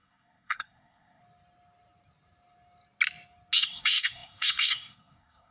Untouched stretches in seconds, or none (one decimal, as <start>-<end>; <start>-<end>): 1.2-3.6